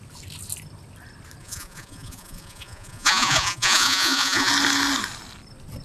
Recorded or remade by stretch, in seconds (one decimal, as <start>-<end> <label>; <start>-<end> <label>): 0.0-1.4 recorded; 1.4-4.5 remade; 4.5-5.8 recorded